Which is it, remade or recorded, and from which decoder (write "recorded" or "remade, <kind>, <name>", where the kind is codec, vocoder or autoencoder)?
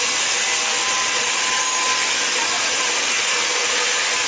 recorded